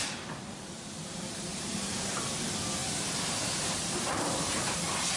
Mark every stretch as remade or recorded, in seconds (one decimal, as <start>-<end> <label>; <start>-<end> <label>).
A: 0.0-1.5 recorded; 1.5-2.3 remade; 2.3-2.8 recorded; 2.8-4.8 remade; 4.8-5.2 recorded